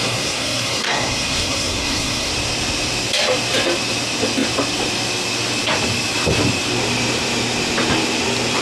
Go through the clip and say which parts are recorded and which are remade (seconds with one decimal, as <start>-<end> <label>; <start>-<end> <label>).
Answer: 0.0-2.3 remade; 2.3-8.6 recorded